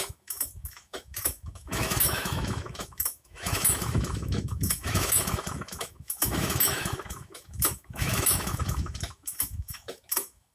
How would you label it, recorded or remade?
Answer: remade